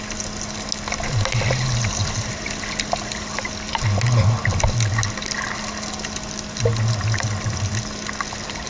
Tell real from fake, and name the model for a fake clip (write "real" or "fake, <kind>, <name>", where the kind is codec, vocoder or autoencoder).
real